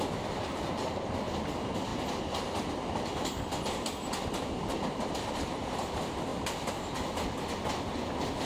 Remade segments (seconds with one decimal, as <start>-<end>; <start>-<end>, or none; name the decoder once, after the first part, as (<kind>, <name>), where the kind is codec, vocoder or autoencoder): 0.0-1.9 (vocoder, BigVGAN v2); 4.9-6.3